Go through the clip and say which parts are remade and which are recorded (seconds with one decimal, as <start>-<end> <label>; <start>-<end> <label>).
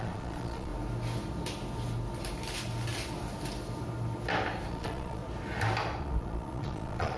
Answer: 0.0-0.7 remade; 0.7-4.7 recorded; 4.7-5.2 remade; 5.2-6.0 recorded; 6.0-7.2 remade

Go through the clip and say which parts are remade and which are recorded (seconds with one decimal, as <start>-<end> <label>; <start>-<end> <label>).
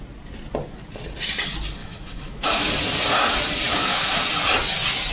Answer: 0.0-1.8 recorded; 1.8-2.7 remade; 2.7-3.7 recorded; 3.7-4.2 remade; 4.2-5.1 recorded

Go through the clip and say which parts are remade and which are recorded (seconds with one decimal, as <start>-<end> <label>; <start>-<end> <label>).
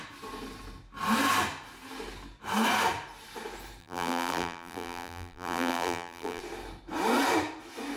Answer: 0.0-3.8 recorded; 3.8-6.4 remade; 6.4-8.0 recorded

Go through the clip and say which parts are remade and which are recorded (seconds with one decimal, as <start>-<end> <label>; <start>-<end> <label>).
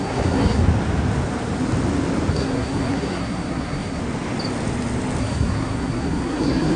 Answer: 0.0-0.6 remade; 0.6-2.3 recorded; 2.3-4.0 remade; 4.0-5.2 recorded; 5.2-6.8 remade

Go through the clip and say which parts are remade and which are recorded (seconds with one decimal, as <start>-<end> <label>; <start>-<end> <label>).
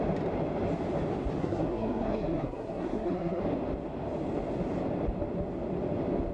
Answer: 0.0-1.4 recorded; 1.4-3.4 remade; 3.4-6.3 recorded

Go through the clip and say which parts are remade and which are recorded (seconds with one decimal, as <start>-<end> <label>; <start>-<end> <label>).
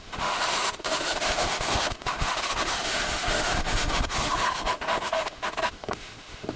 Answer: 0.0-6.6 remade